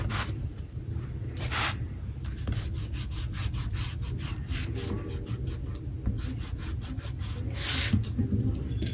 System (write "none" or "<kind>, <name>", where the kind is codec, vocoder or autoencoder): none